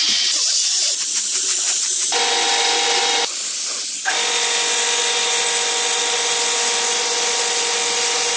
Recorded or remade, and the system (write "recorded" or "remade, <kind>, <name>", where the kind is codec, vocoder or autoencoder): recorded